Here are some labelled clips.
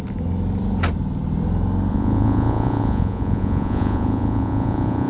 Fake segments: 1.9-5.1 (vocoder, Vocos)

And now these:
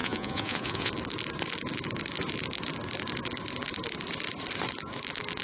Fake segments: 0.0-0.9 (vocoder, Vocos)

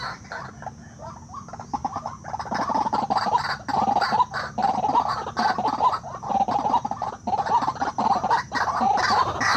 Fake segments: none

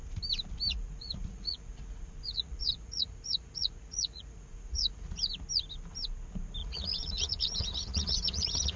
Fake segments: 0.7-5.2 (vocoder, Vocos); 6.6-8.8

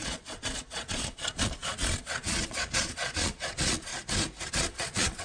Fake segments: 0.0-3.9 (vocoder, Vocos); 4.5-5.2